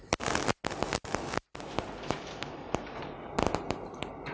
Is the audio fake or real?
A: real